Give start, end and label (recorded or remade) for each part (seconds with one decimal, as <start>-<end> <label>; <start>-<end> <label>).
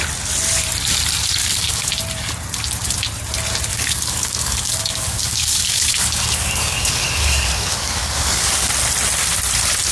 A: 0.0-1.4 recorded; 1.4-1.9 remade; 1.9-3.7 recorded; 3.7-8.7 remade; 8.7-9.9 recorded